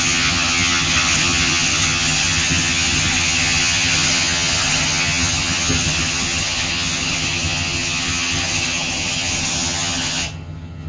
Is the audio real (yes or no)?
no